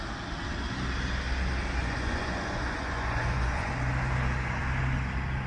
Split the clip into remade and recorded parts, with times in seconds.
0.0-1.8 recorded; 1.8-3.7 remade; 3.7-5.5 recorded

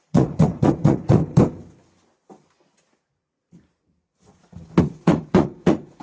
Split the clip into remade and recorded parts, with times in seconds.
0.0-1.2 remade; 1.2-4.8 recorded; 4.8-6.0 remade

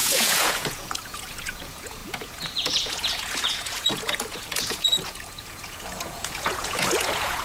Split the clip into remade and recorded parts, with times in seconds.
0.0-7.4 remade